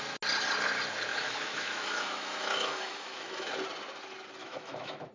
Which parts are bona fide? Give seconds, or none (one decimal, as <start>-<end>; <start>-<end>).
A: 0.0-1.1; 3.5-4.4